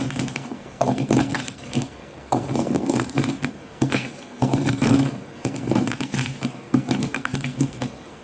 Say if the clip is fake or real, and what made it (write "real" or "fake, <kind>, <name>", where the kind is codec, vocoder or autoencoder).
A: fake, codec, SNAC